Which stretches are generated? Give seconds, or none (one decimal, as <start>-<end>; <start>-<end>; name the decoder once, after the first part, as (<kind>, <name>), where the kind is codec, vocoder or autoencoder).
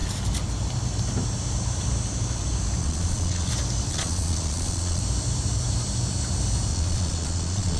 2.8-3.5 (vocoder, Vocos); 3.9-5.0; 6.7-7.8